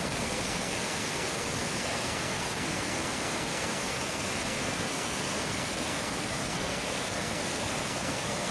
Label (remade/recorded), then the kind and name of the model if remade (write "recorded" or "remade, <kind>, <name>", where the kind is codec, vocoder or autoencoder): remade, codec, SNAC